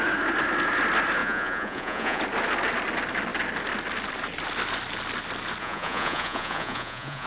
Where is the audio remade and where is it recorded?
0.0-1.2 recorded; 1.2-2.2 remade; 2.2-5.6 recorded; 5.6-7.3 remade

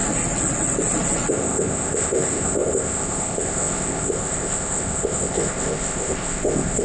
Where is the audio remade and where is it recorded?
0.0-1.3 recorded; 1.3-6.8 remade

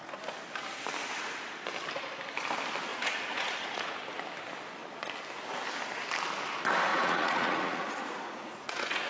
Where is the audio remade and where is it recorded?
0.0-2.9 recorded; 2.9-4.0 remade; 4.0-6.9 recorded; 6.9-9.1 remade